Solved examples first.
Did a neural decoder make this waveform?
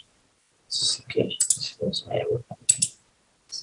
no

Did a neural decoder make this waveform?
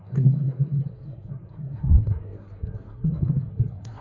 yes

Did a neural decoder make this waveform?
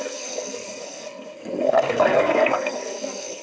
yes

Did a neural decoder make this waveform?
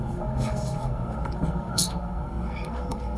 yes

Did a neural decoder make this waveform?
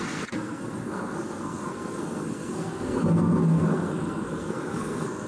yes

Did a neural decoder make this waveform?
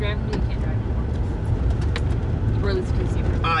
no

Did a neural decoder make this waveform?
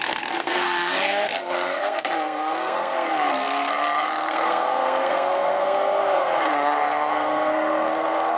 yes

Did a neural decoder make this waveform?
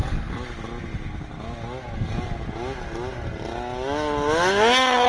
no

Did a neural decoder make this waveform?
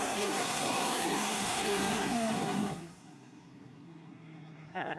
yes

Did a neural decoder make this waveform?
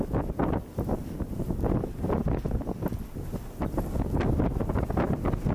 no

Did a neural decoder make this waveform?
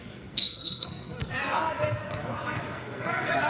yes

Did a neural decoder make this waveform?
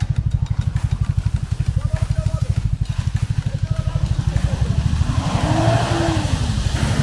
no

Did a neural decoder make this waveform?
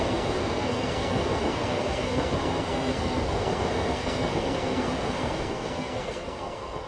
yes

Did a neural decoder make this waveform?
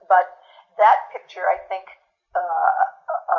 no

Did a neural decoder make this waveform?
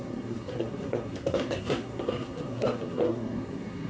yes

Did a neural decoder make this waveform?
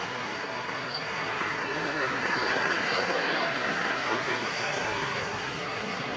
yes